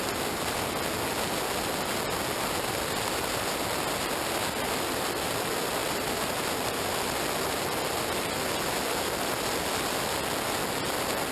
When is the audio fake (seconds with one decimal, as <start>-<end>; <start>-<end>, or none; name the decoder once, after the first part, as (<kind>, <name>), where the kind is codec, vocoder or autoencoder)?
none